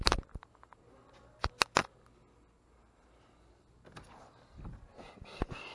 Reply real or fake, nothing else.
real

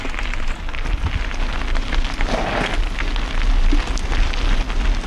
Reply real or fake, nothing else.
real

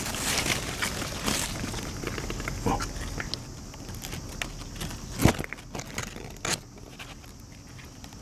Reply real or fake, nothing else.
real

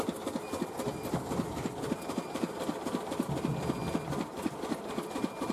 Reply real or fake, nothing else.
real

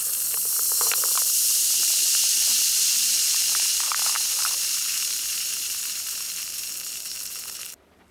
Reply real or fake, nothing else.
fake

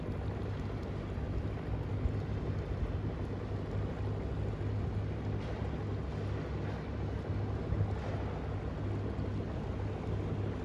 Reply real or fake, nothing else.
real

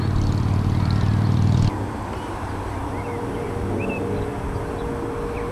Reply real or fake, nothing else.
fake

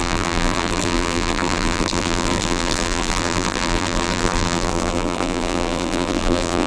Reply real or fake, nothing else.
fake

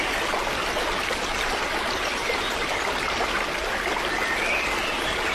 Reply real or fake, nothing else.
real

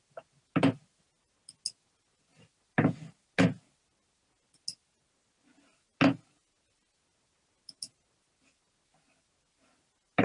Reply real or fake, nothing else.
real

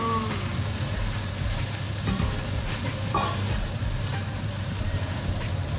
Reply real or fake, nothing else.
fake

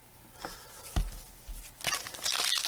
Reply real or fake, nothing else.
real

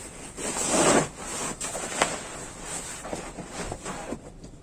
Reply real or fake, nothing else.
real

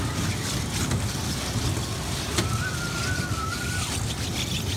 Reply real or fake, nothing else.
real